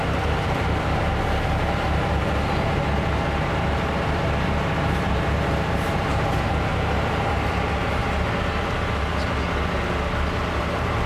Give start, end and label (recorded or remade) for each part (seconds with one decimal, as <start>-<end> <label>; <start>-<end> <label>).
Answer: 0.0-1.1 remade; 1.1-3.5 recorded; 3.5-6.7 remade; 6.7-7.3 recorded; 7.3-8.0 remade; 8.0-10.6 recorded; 10.6-11.1 remade